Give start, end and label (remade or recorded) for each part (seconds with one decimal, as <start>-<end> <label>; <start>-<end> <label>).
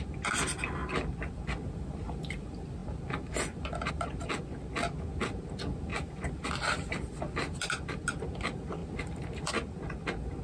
0.0-5.9 recorded; 5.9-6.9 remade; 6.9-8.8 recorded; 8.8-9.5 remade; 9.5-10.4 recorded